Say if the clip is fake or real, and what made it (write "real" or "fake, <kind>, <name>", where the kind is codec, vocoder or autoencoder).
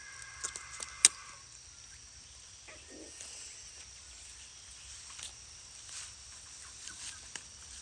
real